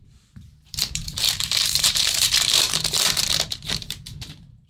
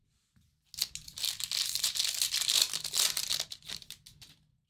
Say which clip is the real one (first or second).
second